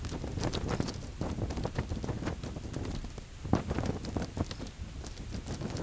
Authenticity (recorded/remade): recorded